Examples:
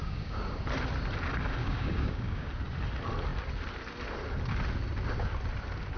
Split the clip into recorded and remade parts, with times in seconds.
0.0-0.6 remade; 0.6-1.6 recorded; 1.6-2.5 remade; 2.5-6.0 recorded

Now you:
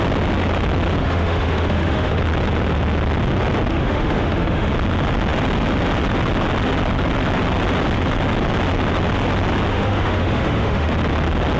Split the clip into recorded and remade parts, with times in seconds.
0.0-1.0 recorded; 1.0-2.2 remade; 2.2-3.7 recorded; 3.7-4.7 remade; 4.7-9.7 recorded; 9.7-10.9 remade; 10.9-11.6 recorded

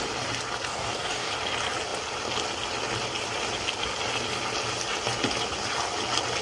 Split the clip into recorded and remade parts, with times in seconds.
0.0-0.7 recorded; 0.7-1.3 remade; 1.3-6.4 recorded

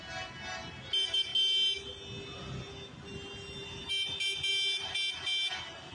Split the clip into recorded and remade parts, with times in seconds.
0.0-5.9 recorded

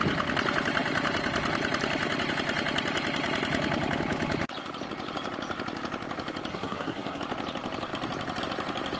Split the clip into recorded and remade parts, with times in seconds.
0.0-6.5 recorded; 6.5-7.2 remade; 7.2-9.0 recorded

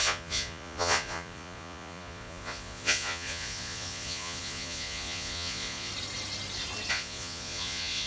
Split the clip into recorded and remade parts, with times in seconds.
0.0-5.9 remade; 5.9-6.9 recorded; 6.9-8.1 remade

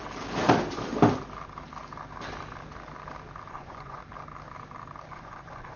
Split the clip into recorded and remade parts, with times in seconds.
0.0-3.5 recorded; 3.5-4.0 remade; 4.0-5.1 recorded; 5.1-5.8 remade